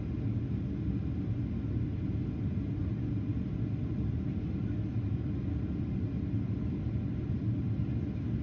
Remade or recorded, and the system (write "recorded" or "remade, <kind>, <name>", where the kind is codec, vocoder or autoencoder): recorded